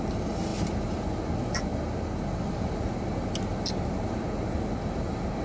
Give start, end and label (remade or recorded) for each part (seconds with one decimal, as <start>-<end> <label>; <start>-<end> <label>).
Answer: 0.0-0.5 recorded; 0.5-1.1 remade; 1.1-5.4 recorded